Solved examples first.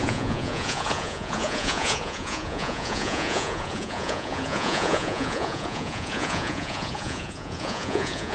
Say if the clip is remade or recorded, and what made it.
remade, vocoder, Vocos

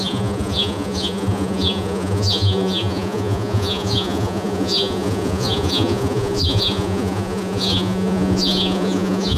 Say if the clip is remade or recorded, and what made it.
remade, vocoder, Vocos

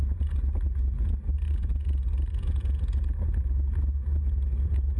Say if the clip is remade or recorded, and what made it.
recorded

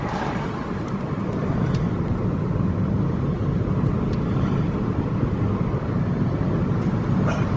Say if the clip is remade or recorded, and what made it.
recorded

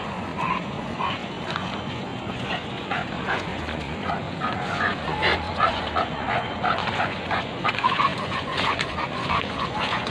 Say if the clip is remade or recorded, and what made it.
remade, vocoder, Vocos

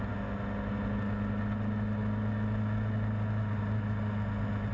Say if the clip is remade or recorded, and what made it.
recorded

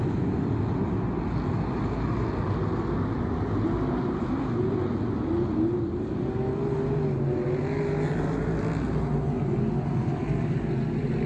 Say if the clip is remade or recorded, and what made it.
recorded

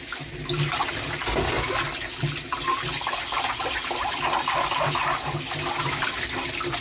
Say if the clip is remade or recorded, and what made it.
recorded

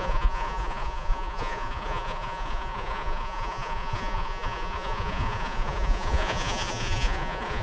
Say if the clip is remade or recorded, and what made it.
remade, vocoder, Vocos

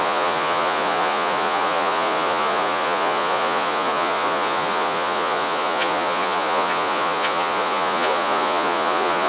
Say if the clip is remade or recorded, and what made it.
remade, vocoder, Vocos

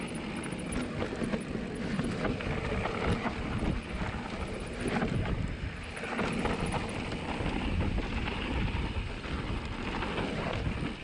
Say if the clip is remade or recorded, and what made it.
recorded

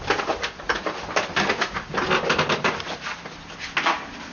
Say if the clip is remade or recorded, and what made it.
recorded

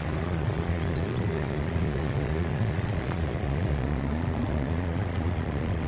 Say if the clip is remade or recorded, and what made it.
remade, vocoder, Vocos